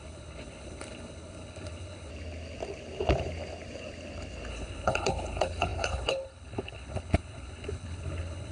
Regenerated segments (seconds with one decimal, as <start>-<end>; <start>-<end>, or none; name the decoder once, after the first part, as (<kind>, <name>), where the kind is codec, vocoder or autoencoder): 0.0-2.1 (codec, HILCodec); 4.5-8.5